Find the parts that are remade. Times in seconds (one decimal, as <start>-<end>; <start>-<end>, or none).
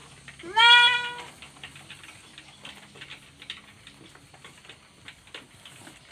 none